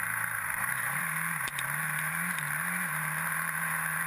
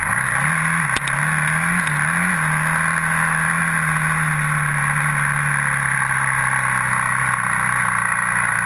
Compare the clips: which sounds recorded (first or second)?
second